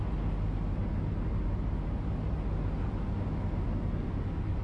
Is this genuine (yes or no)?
yes